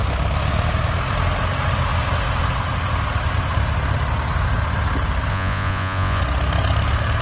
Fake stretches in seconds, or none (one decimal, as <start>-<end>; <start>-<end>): 5.3-6.2